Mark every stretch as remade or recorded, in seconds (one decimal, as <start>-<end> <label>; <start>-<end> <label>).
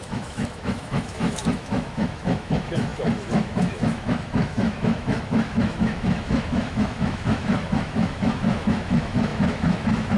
0.0-10.2 remade